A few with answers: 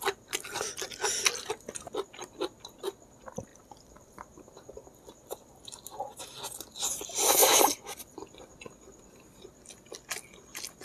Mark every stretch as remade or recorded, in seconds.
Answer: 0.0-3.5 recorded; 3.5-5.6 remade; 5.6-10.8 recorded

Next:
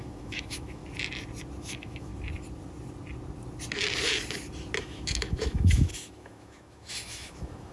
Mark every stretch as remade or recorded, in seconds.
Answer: 0.0-0.8 remade; 0.8-1.6 recorded; 1.6-2.1 remade; 2.1-4.8 recorded; 4.8-7.7 remade

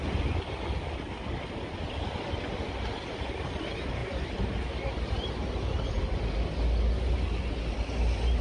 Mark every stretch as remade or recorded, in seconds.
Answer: 0.0-8.4 recorded

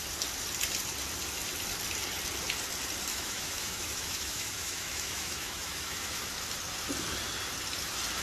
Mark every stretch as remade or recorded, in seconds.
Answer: 0.0-3.1 recorded; 3.1-6.2 remade; 6.2-8.2 recorded

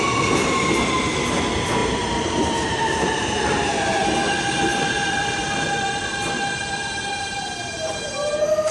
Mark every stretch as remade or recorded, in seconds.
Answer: 0.0-1.8 recorded; 1.8-3.8 remade; 3.8-4.7 recorded; 4.7-8.7 remade

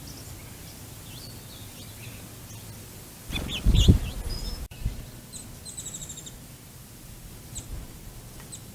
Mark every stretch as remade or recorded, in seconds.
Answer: 0.0-8.7 recorded

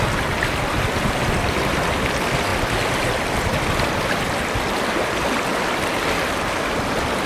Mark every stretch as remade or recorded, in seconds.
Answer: 0.0-7.3 recorded